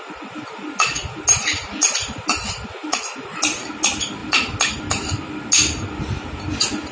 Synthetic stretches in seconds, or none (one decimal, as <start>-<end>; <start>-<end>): none